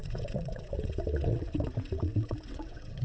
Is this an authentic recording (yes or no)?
no